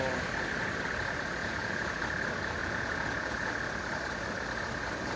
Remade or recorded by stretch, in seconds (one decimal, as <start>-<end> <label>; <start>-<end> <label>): 0.0-1.4 recorded; 1.4-2.0 remade; 2.0-2.6 recorded; 2.6-3.5 remade; 3.5-5.2 recorded